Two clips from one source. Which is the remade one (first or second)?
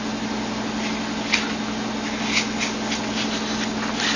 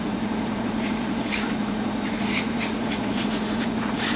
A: second